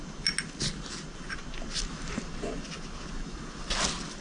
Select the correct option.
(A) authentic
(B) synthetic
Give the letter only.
A